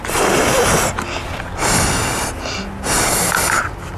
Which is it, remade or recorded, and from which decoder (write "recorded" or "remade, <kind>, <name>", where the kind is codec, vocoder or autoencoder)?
recorded